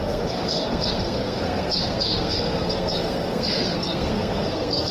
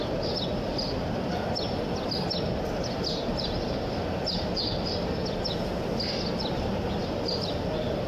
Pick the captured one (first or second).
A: second